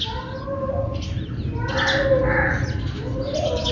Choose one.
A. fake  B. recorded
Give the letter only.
B